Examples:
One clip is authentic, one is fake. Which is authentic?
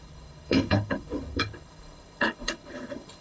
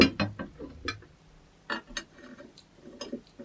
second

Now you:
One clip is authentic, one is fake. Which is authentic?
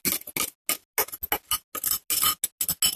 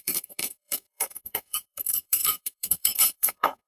first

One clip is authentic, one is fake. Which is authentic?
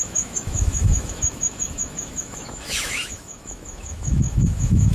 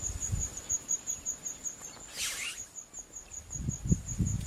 second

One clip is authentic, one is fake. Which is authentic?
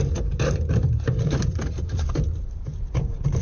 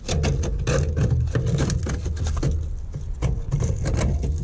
second